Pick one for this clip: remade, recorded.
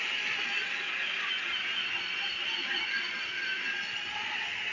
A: recorded